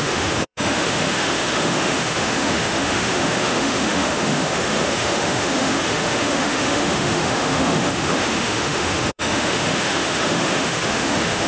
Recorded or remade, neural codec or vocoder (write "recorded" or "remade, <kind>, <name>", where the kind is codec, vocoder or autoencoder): remade, autoencoder, DAC-VAE